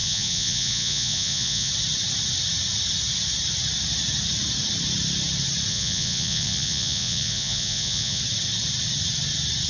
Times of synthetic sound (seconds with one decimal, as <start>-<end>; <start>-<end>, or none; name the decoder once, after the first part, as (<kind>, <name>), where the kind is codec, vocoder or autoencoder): 0.0-1.7 (vocoder, Vocos); 5.7-8.2